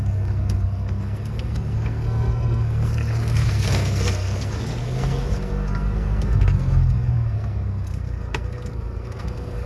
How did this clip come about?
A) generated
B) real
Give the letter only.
A